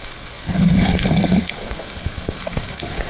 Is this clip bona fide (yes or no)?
no